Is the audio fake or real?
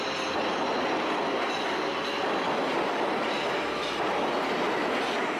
real